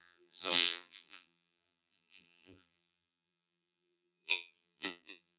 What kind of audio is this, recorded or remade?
remade